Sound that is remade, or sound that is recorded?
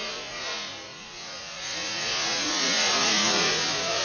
remade